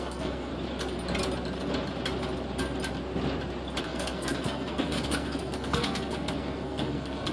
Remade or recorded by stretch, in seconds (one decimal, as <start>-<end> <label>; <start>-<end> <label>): 0.0-0.5 remade; 0.5-3.8 recorded; 3.8-7.3 remade